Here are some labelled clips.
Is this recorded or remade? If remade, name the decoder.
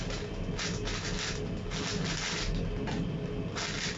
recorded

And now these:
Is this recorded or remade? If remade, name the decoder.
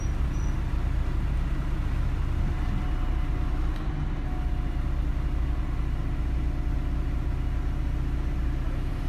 recorded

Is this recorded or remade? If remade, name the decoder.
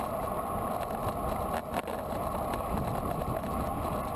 recorded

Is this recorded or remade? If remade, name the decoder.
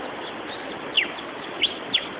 recorded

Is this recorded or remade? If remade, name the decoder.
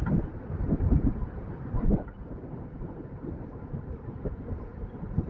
recorded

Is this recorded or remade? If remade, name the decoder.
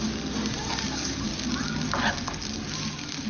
recorded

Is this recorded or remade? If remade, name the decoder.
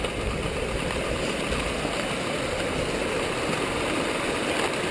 recorded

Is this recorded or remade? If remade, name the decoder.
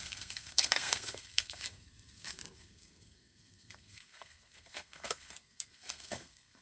remade, codec, SNAC